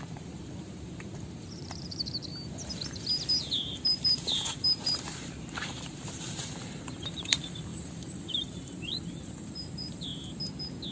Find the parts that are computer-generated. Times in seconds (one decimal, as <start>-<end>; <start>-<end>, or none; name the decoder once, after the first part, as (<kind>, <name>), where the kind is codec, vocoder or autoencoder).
0.0-2.3 (vocoder, BigVGAN v2); 3.4-7.7; 8.3-10.1